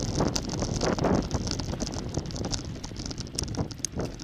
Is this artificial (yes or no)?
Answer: no